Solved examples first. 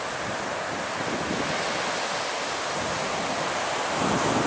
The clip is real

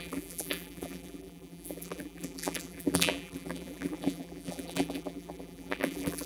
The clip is fake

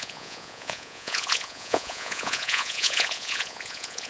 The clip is fake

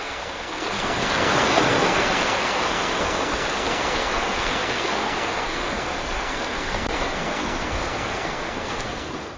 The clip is fake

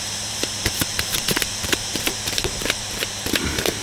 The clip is fake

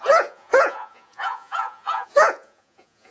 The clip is fake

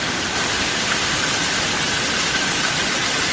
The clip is real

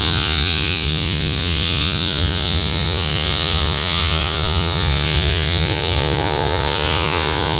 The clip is fake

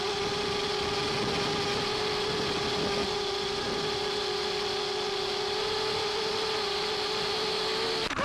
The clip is real